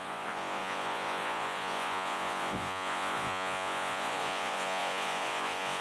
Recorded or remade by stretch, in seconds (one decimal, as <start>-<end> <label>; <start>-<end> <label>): 0.0-5.8 remade

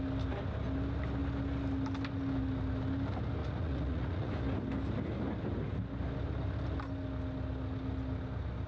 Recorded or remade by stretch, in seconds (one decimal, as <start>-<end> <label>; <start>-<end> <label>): 0.0-3.4 recorded; 3.4-4.3 remade; 4.3-8.7 recorded

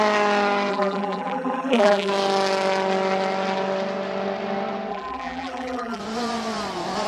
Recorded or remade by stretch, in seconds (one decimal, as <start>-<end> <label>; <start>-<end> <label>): 0.0-0.7 recorded; 0.7-2.1 remade; 2.1-4.9 recorded; 4.9-6.0 remade; 6.0-7.1 recorded

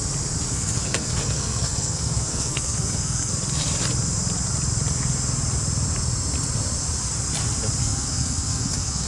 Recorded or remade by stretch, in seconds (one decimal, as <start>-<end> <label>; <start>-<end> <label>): 0.0-0.5 recorded; 0.5-3.3 remade; 3.3-7.8 recorded; 7.8-9.1 remade

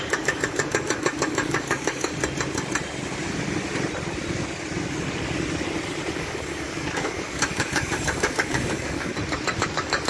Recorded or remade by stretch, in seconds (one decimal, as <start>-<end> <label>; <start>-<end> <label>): 0.0-2.1 remade; 2.1-6.1 recorded; 6.1-9.1 remade; 9.1-9.6 recorded; 9.6-10.1 remade